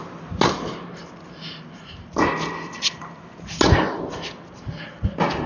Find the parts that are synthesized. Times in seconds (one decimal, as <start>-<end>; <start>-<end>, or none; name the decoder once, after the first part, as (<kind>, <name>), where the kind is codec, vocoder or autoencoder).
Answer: none